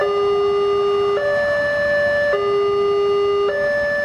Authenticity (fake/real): real